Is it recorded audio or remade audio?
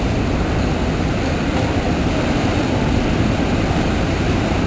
recorded